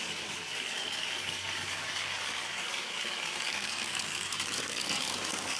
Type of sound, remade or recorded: remade